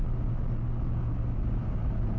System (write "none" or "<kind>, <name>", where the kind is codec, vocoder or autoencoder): none